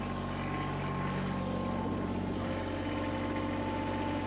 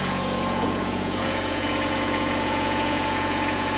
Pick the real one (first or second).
first